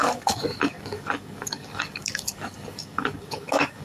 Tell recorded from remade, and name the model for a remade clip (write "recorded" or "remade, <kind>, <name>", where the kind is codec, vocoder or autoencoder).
remade, codec, DAC